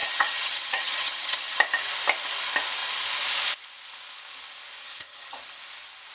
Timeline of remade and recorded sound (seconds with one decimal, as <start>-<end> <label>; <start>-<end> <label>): 0.0-1.6 remade; 1.6-4.8 recorded; 4.8-5.4 remade; 5.4-6.1 recorded